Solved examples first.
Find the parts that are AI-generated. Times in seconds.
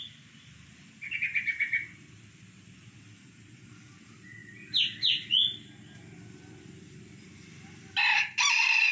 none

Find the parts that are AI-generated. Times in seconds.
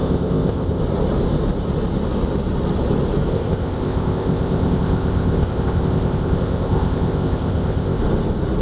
0.0-0.8 (codec, ZipCodec); 3.3-8.0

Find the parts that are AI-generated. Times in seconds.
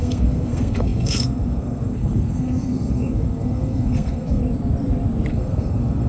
0.0-4.4 (codec, SNAC); 5.3-6.1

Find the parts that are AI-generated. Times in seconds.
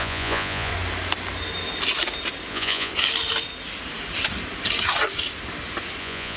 0.0-0.7 (vocoder, Vocos); 2.5-2.9; 6.0-6.4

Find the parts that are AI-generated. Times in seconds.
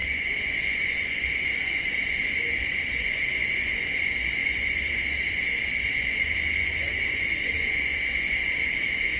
0.0-9.2 (vocoder, Vocos)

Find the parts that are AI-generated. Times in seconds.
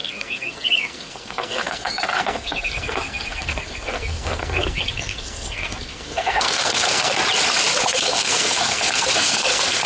0.0-7.2 (codec, SNAC); 7.8-9.9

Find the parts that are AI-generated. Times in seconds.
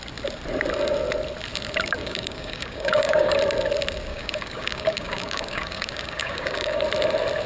2.0-3.4 (codec, DAC); 4.1-6.8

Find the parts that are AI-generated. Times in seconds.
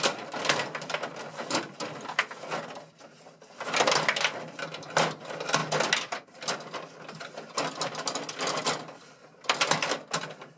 none